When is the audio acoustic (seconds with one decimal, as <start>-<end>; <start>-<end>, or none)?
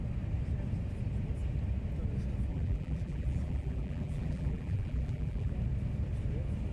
0.0-2.5; 5.5-6.7